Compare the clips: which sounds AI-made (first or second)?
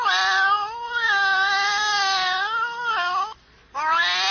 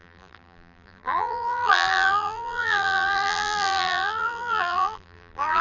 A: second